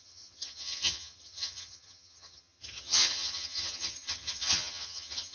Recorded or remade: remade